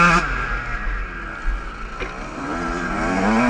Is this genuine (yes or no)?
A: yes